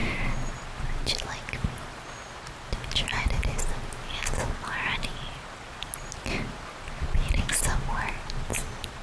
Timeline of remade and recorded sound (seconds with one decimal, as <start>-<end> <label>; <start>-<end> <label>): 0.0-9.0 recorded